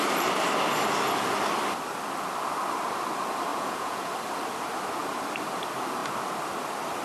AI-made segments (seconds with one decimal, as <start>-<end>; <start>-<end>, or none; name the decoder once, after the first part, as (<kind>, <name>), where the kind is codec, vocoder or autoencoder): 3.5-4.1 (vocoder, Vocos)